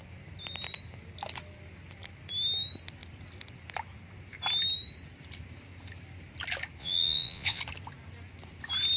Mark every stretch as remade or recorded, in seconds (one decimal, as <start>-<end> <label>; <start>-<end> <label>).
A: 0.0-6.8 recorded; 6.8-7.6 remade; 7.6-9.0 recorded